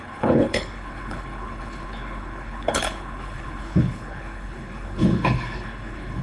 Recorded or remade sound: remade